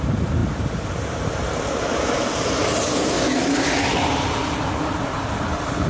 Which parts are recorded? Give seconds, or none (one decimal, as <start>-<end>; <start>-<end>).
0.0-5.9